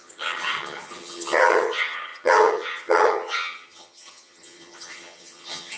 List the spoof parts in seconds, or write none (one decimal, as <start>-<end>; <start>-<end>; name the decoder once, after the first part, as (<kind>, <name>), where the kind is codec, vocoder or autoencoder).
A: 0.0-5.8 (vocoder, HiFi-GAN)